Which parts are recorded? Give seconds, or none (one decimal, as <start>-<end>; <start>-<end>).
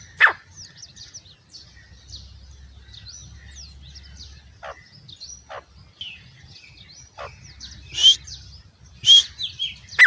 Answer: 0.0-10.1